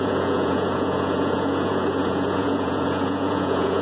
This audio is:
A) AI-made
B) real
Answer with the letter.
A